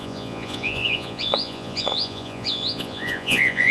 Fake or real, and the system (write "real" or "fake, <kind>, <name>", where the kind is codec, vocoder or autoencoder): fake, vocoder, Vocos